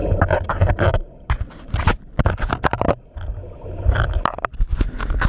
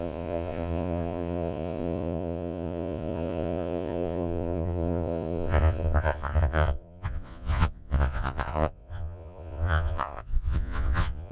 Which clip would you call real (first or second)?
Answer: first